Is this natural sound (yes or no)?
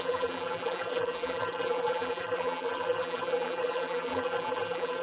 no